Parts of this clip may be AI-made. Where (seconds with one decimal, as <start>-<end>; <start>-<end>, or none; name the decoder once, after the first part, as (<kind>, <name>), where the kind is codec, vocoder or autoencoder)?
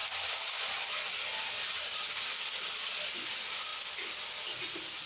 none